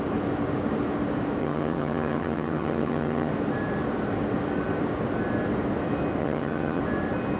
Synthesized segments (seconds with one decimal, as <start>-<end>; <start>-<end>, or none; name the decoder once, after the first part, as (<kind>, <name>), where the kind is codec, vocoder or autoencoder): 1.4-3.3 (vocoder, HiFi-GAN); 6.2-6.8